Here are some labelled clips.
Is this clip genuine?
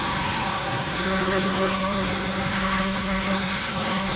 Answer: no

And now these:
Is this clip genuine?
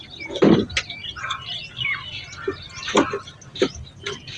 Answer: yes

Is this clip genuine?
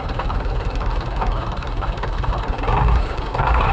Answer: no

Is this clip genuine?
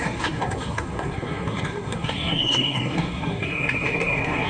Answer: no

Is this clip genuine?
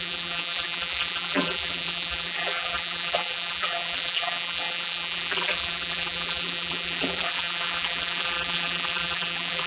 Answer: no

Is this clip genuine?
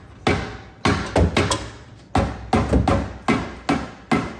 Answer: yes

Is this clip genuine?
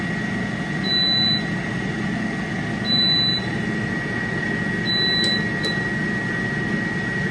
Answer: yes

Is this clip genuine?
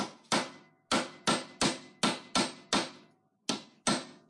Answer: yes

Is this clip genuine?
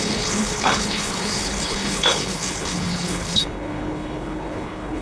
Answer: no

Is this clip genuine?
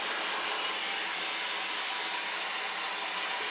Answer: yes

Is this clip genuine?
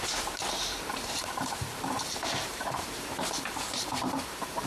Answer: no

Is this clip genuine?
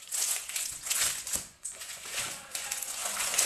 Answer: no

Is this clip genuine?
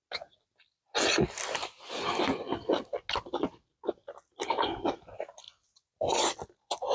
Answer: yes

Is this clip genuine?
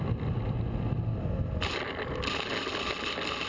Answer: yes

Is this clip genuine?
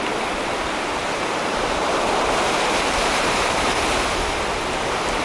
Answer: no